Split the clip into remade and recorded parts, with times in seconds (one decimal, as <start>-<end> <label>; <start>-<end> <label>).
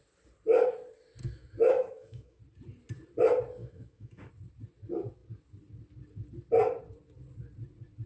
0.0-1.2 recorded; 1.2-2.4 remade; 2.4-3.6 recorded; 3.6-4.3 remade; 4.3-8.1 recorded